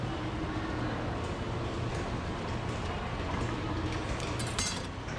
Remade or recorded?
recorded